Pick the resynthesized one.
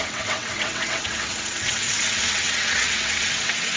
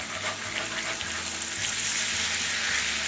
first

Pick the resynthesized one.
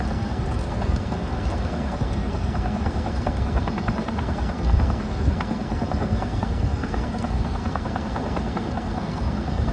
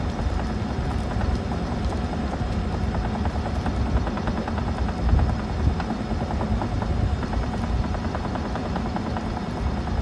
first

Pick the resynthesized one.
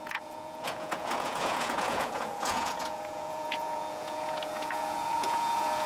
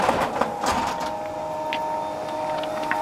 first